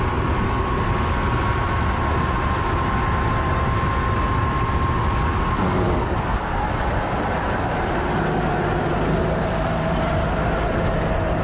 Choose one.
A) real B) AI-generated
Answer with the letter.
A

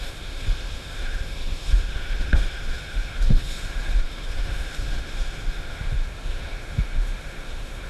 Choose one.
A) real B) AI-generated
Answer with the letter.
B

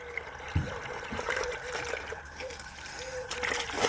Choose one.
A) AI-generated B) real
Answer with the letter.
A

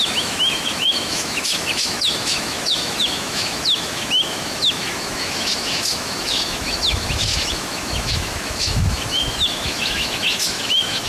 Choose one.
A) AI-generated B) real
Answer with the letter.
A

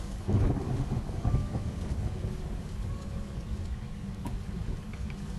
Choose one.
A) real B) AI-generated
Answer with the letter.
B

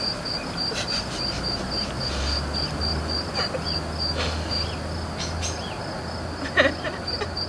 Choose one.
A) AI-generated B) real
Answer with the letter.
B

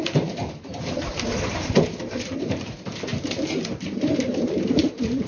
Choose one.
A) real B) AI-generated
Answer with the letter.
B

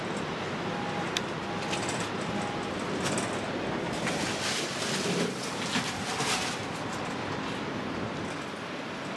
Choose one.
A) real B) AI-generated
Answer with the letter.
A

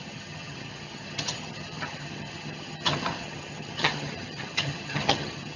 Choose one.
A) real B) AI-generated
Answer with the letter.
B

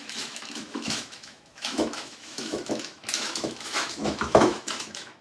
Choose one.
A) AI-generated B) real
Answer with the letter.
A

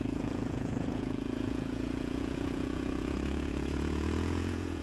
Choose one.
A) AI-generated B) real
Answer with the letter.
A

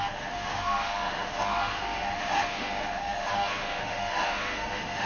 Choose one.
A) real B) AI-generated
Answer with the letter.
B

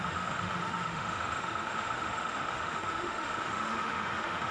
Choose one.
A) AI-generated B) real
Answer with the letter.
A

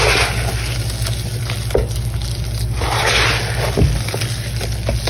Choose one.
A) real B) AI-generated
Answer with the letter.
A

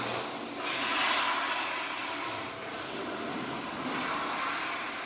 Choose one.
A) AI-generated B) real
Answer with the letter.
B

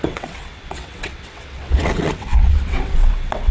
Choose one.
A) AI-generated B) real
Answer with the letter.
A